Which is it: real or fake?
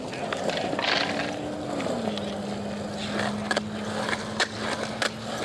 real